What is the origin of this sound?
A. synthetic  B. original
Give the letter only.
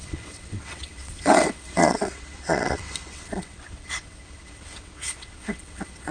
A